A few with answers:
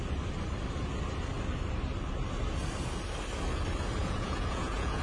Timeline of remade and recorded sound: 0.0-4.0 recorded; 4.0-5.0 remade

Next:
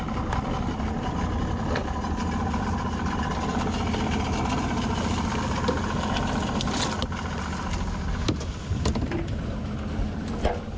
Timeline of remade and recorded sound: 0.0-10.8 recorded

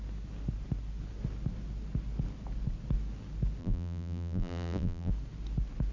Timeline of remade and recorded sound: 0.0-3.6 recorded; 3.6-5.1 remade; 5.1-5.9 recorded

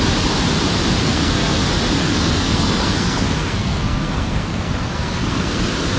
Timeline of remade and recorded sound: 0.0-1.0 recorded; 1.0-1.6 remade; 1.6-2.0 recorded; 2.0-5.6 remade; 5.6-6.0 recorded